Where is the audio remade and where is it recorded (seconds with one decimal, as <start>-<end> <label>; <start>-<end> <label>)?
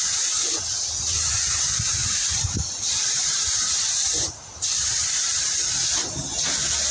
0.0-2.0 recorded; 2.0-6.1 remade; 6.1-6.9 recorded